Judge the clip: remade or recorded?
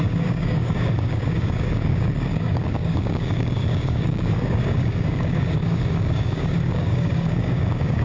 remade